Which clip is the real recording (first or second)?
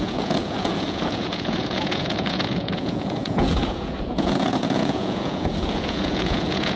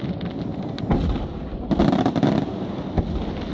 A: second